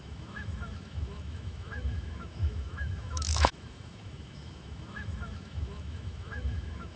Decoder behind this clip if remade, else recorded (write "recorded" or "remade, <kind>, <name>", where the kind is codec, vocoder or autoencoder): remade, autoencoder, DAC-VAE